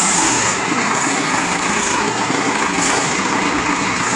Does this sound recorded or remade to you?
remade